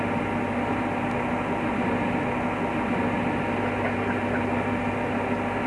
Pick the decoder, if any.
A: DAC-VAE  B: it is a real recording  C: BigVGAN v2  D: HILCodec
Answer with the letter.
B